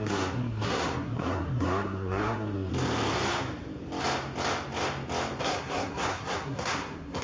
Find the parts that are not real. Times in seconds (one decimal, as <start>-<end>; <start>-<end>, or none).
0.0-2.7; 5.4-7.2